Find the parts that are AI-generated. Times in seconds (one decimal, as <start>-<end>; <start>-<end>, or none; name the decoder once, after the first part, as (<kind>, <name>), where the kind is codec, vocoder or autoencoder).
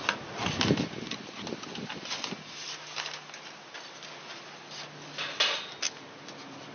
none